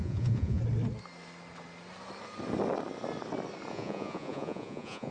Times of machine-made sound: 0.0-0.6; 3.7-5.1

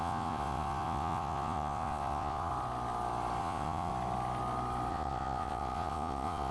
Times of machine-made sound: 0.0-2.5; 3.4-3.9; 4.9-6.5

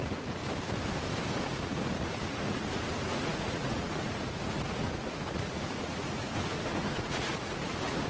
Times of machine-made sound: 0.0-0.4; 1.3-8.1

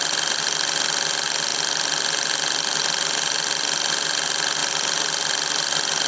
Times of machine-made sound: none

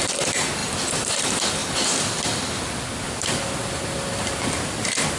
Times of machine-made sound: none